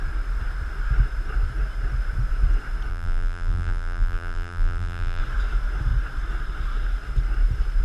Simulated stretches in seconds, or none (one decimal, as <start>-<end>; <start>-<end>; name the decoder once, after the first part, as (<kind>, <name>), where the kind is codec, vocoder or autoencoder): 2.9-5.2 (vocoder, BigVGAN v2)